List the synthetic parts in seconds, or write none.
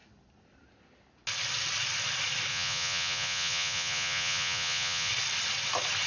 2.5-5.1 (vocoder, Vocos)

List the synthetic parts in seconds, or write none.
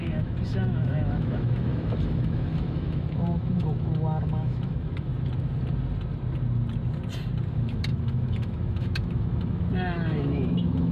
0.0-5.1 (autoencoder, DAC-VAE); 7.5-10.9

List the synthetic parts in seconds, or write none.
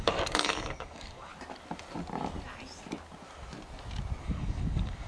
0.0-1.3 (codec, DAC); 4.2-5.1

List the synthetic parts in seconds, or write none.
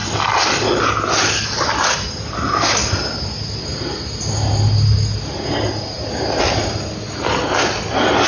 none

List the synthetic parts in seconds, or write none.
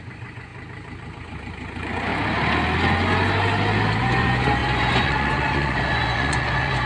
0.0-0.5 (vocoder, Vocos); 1.2-2.1; 4.0-6.9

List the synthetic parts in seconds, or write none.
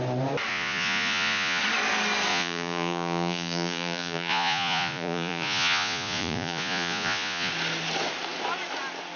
0.5-1.6 (vocoder, Vocos); 2.3-7.5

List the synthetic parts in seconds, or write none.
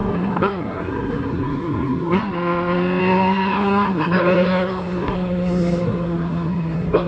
0.0-2.2 (codec, SNAC); 3.0-7.1